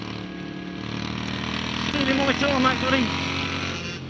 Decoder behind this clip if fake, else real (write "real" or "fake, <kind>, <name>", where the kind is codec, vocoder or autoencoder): real